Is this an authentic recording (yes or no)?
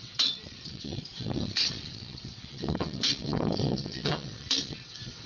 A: no